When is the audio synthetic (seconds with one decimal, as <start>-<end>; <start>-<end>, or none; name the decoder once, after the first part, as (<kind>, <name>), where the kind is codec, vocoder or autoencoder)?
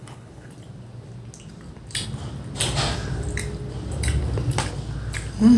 0.0-0.5 (codec, HILCodec)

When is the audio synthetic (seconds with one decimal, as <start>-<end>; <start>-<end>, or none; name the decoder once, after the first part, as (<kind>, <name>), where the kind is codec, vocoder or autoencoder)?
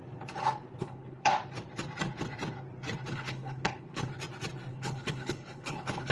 0.8-1.3 (codec, HILCodec); 3.1-4.1; 4.7-6.1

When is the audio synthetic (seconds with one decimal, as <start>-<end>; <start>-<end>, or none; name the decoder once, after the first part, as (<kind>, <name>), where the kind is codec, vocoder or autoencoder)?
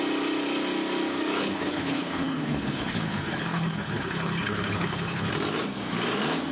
1.4-5.3 (codec, HILCodec)